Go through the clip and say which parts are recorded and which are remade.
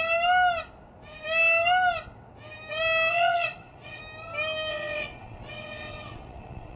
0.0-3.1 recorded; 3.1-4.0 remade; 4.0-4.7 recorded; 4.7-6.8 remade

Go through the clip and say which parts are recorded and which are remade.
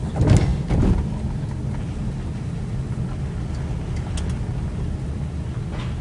0.0-6.0 recorded